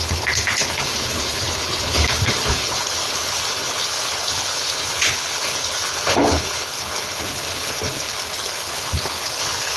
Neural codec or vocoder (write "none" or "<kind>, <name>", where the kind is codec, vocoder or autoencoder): codec, HILCodec